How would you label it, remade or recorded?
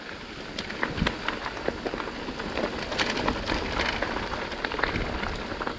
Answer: recorded